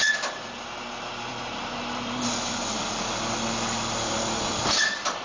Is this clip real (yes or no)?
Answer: no